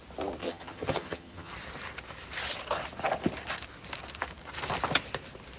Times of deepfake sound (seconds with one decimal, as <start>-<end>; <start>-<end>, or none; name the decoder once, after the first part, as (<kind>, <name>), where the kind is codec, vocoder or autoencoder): 0.4-1.5 (vocoder, HiFi-GAN)